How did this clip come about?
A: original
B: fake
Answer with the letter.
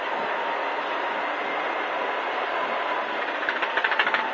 A